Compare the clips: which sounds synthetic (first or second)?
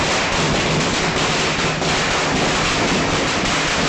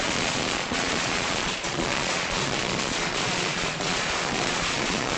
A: second